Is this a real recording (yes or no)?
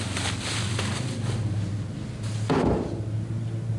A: yes